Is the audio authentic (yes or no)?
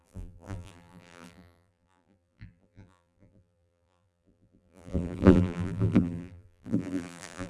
no